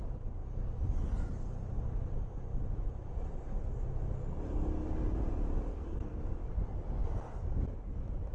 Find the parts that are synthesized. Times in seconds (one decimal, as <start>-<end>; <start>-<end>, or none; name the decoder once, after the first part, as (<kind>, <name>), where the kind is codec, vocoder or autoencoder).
5.7-6.2 (codec, SNAC)